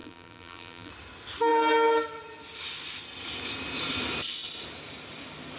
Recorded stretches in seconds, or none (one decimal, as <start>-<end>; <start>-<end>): 0.9-5.6